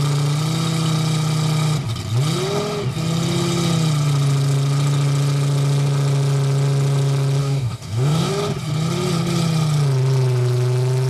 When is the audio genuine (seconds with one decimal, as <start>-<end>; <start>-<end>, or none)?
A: 0.0-7.4; 8.3-11.1